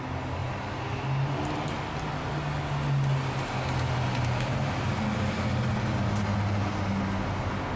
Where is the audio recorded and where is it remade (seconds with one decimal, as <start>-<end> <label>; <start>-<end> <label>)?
0.0-7.8 recorded